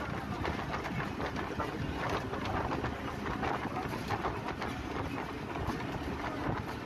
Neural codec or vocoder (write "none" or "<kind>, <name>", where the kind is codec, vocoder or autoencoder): none